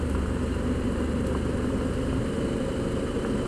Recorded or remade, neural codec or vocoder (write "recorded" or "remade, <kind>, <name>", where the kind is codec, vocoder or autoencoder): remade, vocoder, BigVGAN v2